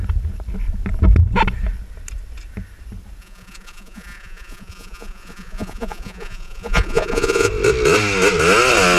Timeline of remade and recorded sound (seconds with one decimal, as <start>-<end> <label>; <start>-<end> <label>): 0.0-3.2 recorded; 3.2-7.5 remade; 7.5-9.0 recorded